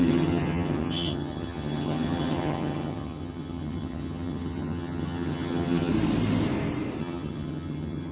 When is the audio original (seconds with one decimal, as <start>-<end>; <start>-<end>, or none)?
5.9-7.0